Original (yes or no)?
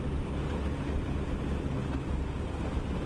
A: yes